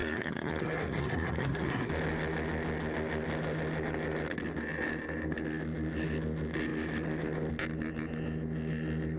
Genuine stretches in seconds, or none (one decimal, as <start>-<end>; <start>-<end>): 1.9-9.2